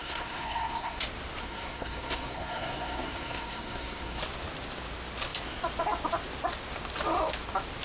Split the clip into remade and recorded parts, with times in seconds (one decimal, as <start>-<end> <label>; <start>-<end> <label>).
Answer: 0.0-1.0 remade; 1.0-1.4 recorded; 1.4-4.2 remade; 4.2-7.8 recorded